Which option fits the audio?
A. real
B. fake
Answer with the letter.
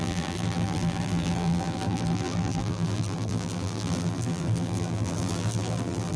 B